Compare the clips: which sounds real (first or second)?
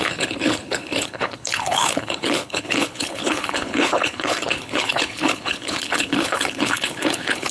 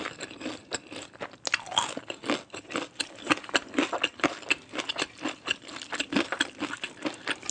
second